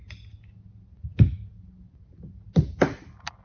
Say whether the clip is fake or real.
real